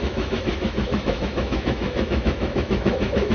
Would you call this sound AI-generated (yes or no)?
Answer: yes